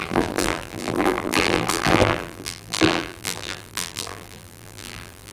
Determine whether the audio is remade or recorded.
remade